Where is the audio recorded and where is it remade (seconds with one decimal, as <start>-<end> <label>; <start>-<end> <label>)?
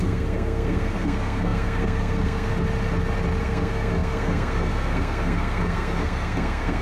0.0-2.5 remade; 2.5-3.4 recorded; 3.4-6.8 remade